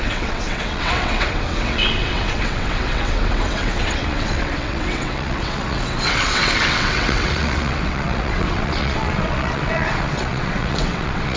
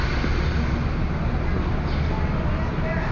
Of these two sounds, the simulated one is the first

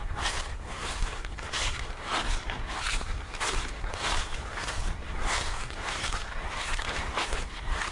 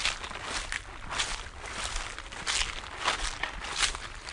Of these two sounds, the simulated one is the first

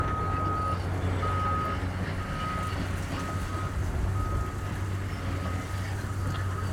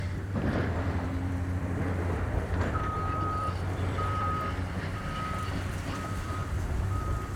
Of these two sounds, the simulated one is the second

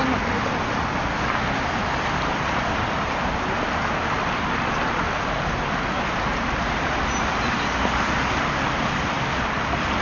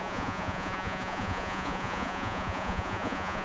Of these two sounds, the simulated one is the second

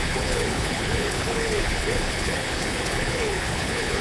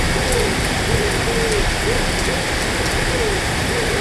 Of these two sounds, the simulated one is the first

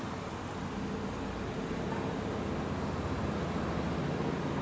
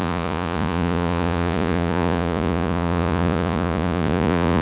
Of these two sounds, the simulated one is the second